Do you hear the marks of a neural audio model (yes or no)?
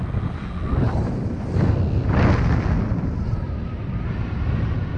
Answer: no